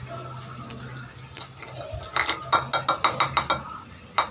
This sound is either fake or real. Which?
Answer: real